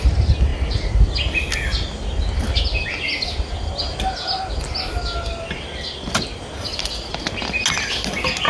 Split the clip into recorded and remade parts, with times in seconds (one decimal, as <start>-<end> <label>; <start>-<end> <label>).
0.0-8.5 recorded